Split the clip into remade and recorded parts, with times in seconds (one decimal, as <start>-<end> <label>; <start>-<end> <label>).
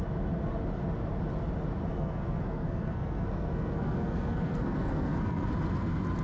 0.0-1.9 recorded; 1.9-5.5 remade; 5.5-6.2 recorded